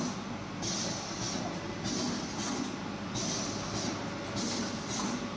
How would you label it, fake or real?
real